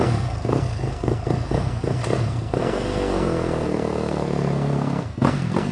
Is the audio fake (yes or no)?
yes